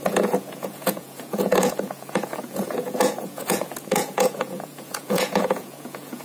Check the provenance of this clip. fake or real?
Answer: fake